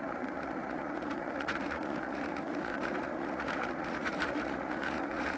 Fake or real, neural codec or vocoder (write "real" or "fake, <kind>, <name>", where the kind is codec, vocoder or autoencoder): fake, vocoder, Vocos